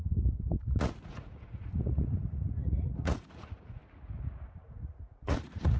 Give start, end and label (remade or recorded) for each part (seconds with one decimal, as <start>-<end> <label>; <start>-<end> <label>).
0.0-3.8 remade; 3.8-4.6 recorded; 4.6-5.8 remade